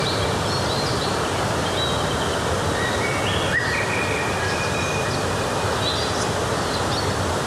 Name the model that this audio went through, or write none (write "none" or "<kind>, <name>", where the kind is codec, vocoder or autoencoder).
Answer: none